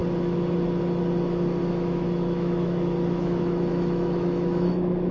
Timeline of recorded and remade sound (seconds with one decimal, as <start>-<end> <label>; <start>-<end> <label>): 0.0-1.6 recorded; 1.6-5.1 remade